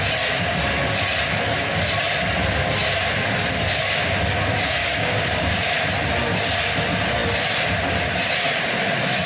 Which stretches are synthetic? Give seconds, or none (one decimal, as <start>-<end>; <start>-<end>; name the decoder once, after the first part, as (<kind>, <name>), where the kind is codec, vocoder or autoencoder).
4.8-5.6 (codec, DAC)